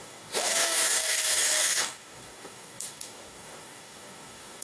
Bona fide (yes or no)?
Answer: no